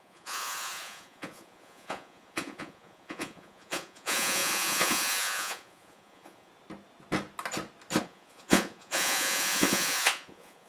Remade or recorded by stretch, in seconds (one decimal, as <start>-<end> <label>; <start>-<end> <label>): 0.0-6.5 remade; 6.5-8.0 recorded; 8.0-10.7 remade